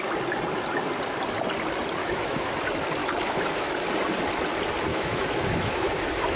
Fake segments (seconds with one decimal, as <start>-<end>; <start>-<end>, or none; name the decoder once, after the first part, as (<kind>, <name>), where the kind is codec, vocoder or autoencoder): 2.0-2.5 (autoencoder, DAC-VAE); 3.0-3.7; 4.9-5.9